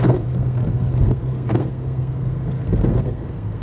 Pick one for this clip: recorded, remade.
remade